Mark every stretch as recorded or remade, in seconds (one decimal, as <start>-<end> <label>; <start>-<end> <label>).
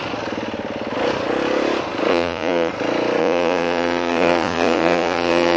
0.0-2.1 recorded; 2.1-2.7 remade; 2.7-3.2 recorded; 3.2-5.6 remade